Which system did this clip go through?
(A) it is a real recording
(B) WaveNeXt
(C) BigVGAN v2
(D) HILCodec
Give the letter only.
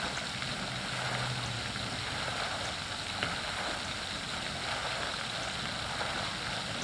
A